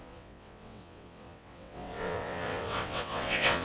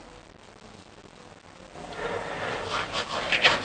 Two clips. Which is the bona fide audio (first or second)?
second